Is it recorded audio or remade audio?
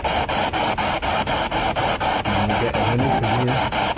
recorded